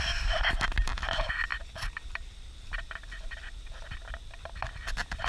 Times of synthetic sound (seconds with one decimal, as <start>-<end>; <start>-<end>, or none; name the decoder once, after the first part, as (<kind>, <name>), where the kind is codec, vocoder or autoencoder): none